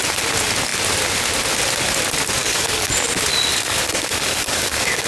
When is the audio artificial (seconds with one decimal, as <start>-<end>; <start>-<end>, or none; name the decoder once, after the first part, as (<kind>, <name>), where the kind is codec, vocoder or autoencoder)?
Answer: 2.4-2.9 (codec, DAC); 3.5-5.1